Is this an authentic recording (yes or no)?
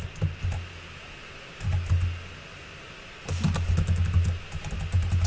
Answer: yes